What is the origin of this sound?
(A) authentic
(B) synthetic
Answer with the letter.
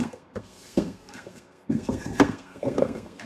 B